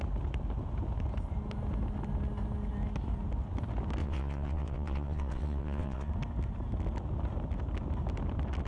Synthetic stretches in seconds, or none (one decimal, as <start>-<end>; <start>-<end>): 4.0-6.1